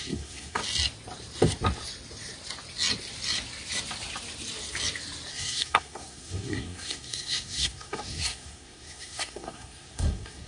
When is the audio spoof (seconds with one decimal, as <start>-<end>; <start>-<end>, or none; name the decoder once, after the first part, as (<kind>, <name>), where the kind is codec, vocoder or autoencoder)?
0.0-0.6 (codec, SNAC); 5.3-10.5